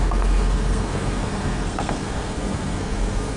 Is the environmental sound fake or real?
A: fake